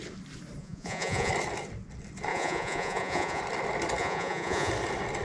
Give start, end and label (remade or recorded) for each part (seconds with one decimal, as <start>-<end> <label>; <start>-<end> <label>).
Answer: 0.0-0.6 recorded; 0.6-1.3 remade; 1.3-2.3 recorded; 2.3-3.4 remade; 3.4-4.0 recorded; 4.0-4.7 remade; 4.7-5.2 recorded